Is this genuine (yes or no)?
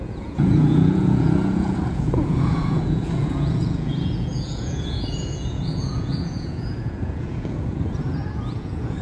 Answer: no